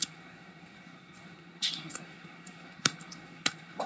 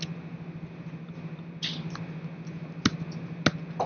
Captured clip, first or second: second